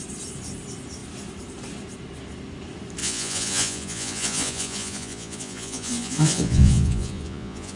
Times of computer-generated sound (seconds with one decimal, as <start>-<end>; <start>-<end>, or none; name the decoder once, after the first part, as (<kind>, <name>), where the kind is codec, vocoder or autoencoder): 3.0-7.8 (vocoder, Vocos)